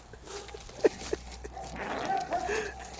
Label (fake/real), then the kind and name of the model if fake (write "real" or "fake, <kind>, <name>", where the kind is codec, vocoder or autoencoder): real